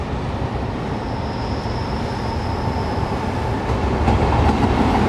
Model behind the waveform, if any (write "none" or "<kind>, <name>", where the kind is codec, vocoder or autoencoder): none